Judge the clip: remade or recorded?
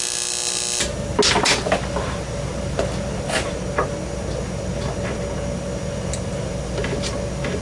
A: recorded